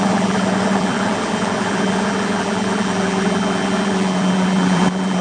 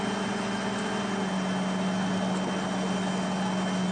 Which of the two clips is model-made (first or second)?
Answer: first